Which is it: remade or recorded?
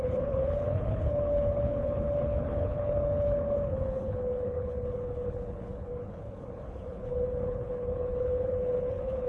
remade